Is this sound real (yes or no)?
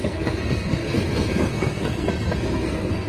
no